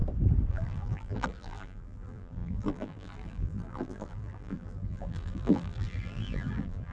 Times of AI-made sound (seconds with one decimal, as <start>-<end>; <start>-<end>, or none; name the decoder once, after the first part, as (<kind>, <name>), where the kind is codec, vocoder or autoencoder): 0.5-6.9 (vocoder, BigVGAN v2)